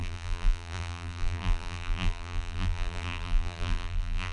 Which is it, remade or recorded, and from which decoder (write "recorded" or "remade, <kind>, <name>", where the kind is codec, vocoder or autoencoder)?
remade, vocoder, BigVGAN v2